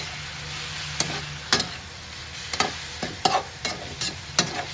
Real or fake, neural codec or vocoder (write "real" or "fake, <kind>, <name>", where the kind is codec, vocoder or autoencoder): real